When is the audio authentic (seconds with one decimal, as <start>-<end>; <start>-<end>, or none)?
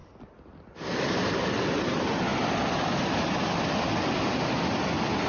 0.0-5.3